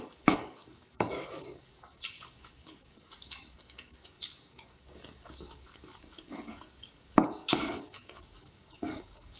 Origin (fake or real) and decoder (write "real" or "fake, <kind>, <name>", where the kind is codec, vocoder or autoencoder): fake, codec, DAC